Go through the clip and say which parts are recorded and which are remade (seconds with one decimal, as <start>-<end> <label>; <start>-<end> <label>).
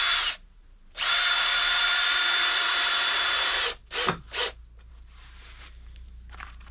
0.0-3.8 remade; 3.8-4.9 recorded; 4.9-6.7 remade